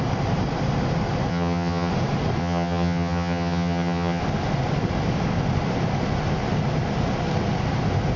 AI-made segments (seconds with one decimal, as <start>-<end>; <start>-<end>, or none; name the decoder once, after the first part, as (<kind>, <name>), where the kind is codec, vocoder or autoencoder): 1.3-1.9 (vocoder, HiFi-GAN); 2.4-4.2